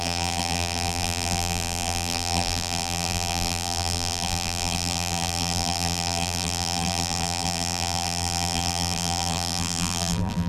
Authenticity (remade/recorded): remade